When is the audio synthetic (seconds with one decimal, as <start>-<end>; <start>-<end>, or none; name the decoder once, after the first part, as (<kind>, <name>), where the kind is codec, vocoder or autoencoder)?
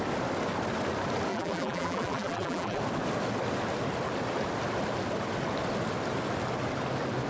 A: 1.3-2.8 (vocoder, BigVGAN v2)